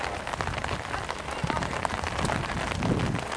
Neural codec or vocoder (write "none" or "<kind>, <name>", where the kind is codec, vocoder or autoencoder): none